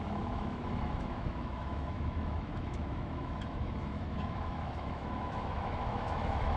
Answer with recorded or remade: remade